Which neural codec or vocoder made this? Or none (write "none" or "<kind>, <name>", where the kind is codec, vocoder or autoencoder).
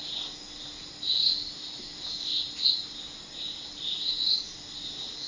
none